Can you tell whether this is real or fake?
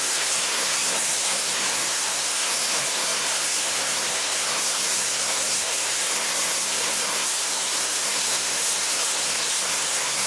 fake